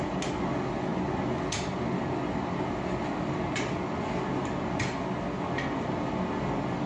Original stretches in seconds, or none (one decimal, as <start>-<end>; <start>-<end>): 0.0-6.9

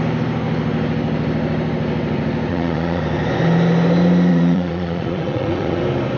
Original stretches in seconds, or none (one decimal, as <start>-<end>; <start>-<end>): 0.0-2.5; 3.0-4.3; 5.8-6.2

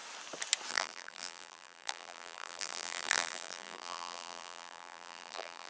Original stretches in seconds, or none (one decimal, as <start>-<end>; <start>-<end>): 0.0-0.7

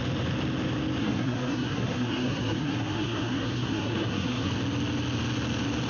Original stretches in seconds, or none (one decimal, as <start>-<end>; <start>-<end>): 0.0-1.0; 4.5-5.9

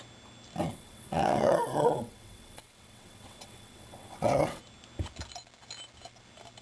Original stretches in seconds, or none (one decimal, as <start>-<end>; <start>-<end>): 0.0-0.7; 4.6-6.6